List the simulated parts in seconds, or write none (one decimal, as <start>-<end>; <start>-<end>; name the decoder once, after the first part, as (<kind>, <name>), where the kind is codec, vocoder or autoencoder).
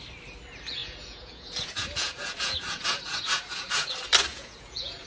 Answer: 0.8-3.9 (vocoder, Vocos); 4.3-5.1